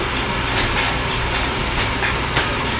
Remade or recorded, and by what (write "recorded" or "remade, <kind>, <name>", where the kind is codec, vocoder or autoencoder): remade, vocoder, BigVGAN v2